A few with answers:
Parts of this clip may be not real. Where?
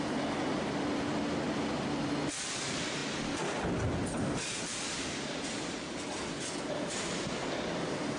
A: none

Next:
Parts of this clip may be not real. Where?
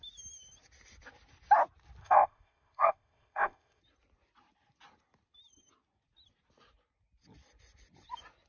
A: 2.0-3.8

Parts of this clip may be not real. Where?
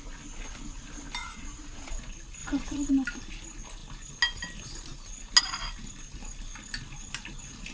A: 1.2-2.0; 2.4-2.9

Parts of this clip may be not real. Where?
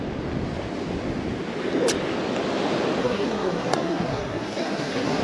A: 3.0-5.2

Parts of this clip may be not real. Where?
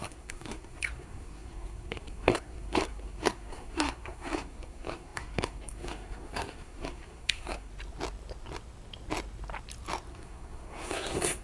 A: 0.0-7.7; 10.1-11.4